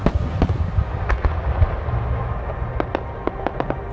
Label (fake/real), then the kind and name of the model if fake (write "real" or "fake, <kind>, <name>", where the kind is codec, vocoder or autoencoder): real